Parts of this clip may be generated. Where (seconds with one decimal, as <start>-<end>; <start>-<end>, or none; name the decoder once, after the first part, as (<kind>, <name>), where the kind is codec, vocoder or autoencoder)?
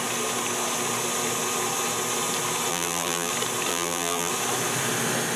2.7-3.3 (vocoder, BigVGAN v2); 3.7-4.3